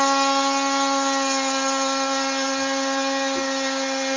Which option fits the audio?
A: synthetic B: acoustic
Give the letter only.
B